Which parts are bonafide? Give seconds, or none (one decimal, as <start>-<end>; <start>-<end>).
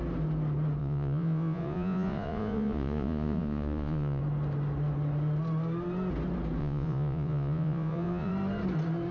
0.0-0.8; 4.2-6.6; 8.3-9.1